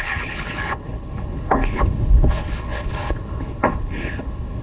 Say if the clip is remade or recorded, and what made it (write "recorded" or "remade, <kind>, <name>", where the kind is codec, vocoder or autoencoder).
remade, codec, HILCodec